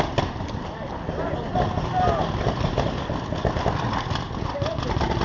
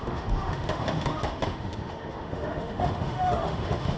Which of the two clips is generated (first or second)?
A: second